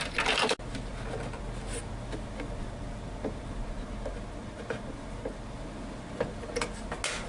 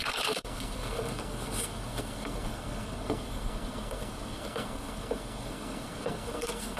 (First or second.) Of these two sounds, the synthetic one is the second